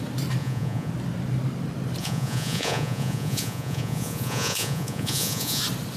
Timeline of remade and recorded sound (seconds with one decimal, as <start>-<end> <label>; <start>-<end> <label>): 0.0-0.4 recorded; 0.4-0.9 remade; 0.9-2.0 recorded; 2.0-5.6 remade; 5.6-6.0 recorded